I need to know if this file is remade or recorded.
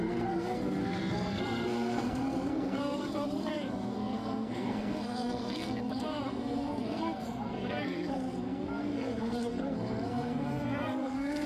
remade